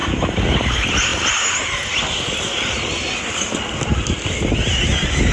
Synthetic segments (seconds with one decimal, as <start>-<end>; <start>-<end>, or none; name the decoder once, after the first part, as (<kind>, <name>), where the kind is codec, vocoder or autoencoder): none